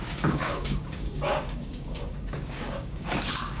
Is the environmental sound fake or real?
fake